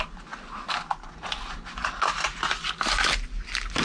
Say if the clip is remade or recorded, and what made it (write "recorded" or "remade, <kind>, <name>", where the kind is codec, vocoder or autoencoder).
recorded